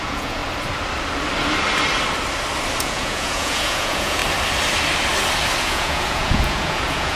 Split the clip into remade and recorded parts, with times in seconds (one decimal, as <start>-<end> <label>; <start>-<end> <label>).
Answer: 0.0-0.4 remade; 0.4-2.8 recorded; 2.8-4.2 remade; 4.2-5.6 recorded; 5.6-7.2 remade